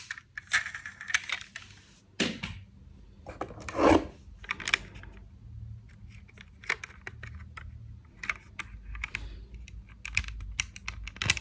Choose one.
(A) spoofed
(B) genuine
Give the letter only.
B